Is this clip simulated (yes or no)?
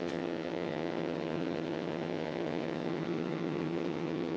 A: yes